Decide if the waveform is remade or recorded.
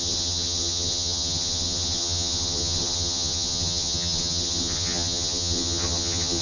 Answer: remade